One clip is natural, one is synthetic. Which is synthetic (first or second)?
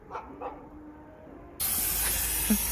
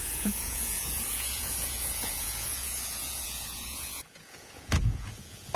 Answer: second